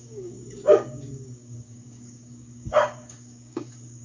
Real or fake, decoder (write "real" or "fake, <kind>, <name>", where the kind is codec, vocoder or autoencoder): fake, codec, DAC